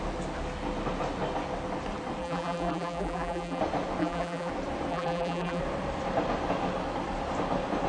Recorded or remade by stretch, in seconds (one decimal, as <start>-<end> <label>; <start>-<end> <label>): 0.0-2.2 recorded; 2.2-3.6 remade; 3.6-4.0 recorded; 4.0-4.5 remade; 4.5-4.9 recorded; 4.9-5.6 remade; 5.6-7.9 recorded